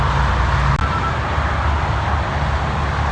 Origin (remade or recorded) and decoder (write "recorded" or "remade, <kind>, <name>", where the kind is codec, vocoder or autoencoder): recorded